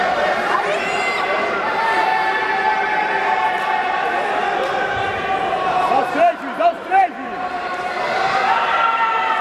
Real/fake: fake